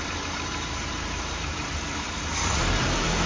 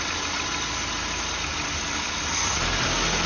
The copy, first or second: first